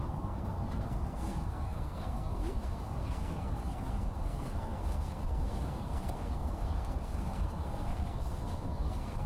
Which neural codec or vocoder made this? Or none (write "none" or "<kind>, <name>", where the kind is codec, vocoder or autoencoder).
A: codec, SNAC